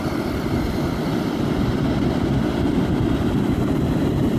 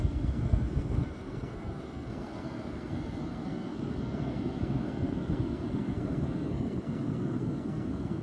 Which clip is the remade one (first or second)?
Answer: second